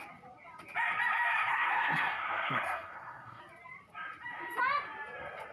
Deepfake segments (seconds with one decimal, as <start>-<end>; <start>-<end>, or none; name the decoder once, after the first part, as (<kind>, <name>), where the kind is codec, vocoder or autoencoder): 1.5-3.4 (codec, SNAC)